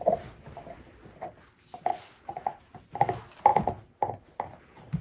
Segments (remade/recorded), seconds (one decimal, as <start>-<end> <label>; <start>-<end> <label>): 0.0-1.9 recorded; 1.9-2.6 remade; 2.6-5.0 recorded